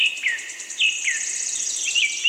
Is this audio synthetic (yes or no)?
no